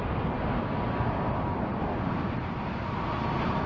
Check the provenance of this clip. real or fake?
real